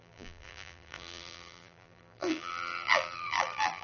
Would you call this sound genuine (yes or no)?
no